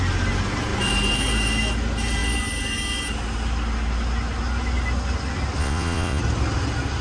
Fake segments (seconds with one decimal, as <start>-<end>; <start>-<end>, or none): 5.6-6.2